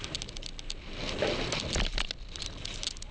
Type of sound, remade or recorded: recorded